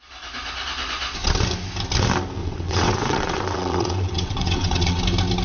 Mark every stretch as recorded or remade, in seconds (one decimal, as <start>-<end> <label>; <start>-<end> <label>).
0.0-2.4 recorded; 2.4-5.0 remade; 5.0-5.4 recorded